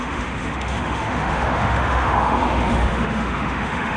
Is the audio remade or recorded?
remade